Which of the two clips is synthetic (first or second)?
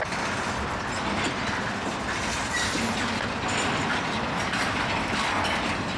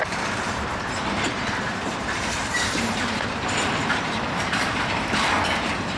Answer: second